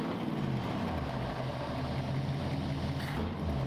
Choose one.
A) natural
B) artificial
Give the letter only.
A